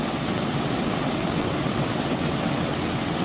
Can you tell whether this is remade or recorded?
remade